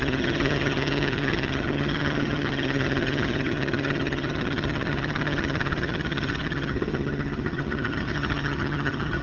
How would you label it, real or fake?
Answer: fake